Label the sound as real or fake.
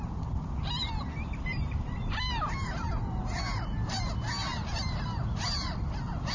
real